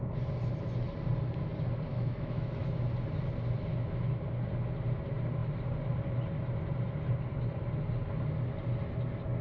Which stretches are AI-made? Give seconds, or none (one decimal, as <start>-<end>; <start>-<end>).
1.9-2.8; 3.7-4.2

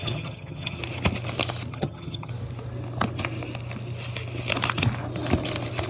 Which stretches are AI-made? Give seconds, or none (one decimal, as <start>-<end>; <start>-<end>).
0.0-0.8; 1.7-2.3

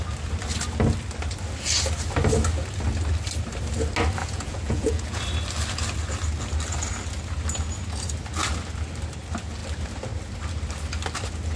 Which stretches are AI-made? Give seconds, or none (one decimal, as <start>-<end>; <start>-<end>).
4.2-5.2

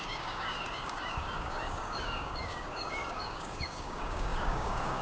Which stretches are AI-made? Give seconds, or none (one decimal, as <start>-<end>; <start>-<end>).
0.0-5.0

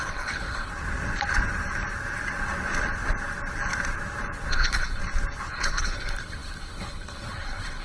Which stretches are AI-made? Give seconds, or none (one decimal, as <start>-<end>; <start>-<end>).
0.0-0.7; 4.5-5.0; 5.5-7.8